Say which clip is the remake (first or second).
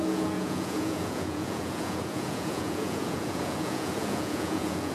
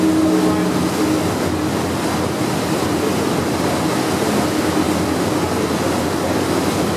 first